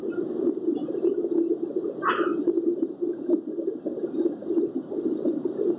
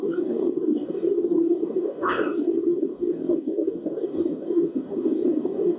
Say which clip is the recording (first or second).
first